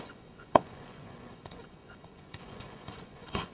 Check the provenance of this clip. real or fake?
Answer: fake